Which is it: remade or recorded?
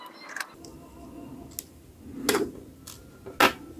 recorded